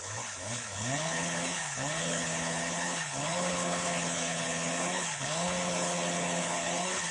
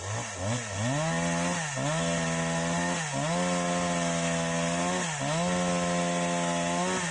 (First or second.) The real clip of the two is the second